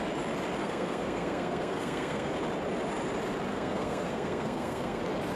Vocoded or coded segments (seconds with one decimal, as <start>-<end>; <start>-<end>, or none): 0.6-2.3; 3.5-5.0